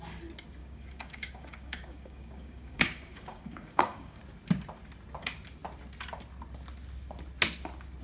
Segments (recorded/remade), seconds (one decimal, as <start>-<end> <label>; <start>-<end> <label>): 0.0-0.6 recorded; 0.6-4.2 remade; 4.2-8.0 recorded